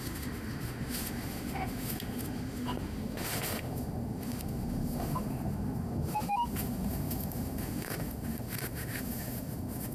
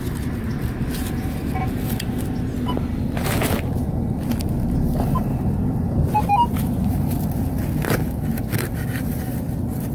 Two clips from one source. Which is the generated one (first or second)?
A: first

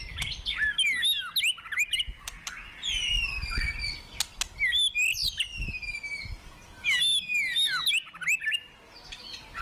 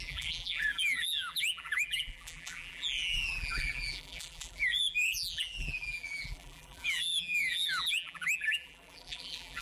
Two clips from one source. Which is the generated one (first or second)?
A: second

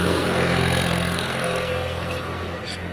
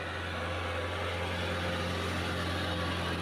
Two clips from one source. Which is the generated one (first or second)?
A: first